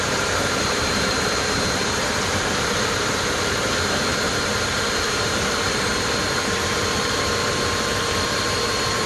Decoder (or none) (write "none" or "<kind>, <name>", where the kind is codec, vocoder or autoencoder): vocoder, BigVGAN v2